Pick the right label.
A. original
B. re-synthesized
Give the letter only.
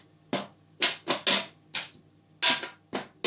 A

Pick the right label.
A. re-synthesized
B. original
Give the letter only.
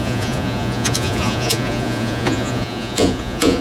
A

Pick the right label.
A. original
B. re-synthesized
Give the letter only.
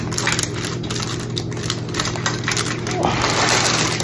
A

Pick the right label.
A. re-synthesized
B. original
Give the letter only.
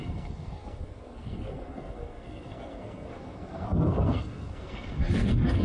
A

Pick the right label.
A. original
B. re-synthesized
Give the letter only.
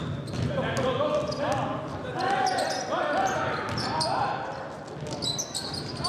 A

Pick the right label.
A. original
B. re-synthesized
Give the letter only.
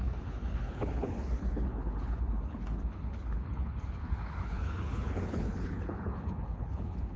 B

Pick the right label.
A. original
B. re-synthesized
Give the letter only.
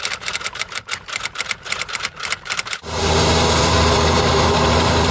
B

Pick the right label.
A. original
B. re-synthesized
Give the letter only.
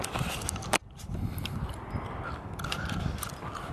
A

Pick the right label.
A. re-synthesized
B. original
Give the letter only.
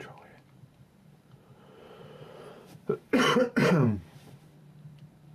A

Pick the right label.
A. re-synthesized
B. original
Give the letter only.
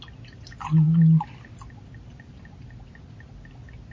B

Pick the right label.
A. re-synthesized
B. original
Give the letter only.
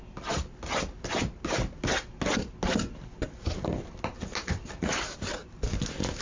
B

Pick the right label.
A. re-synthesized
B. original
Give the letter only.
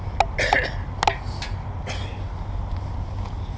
B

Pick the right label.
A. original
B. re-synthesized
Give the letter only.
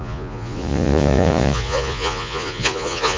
B